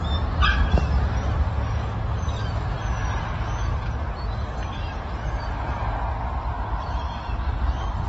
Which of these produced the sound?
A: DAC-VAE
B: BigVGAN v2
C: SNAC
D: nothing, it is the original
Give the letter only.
D